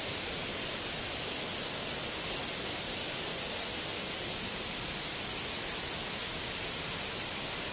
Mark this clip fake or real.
real